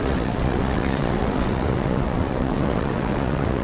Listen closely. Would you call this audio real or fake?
fake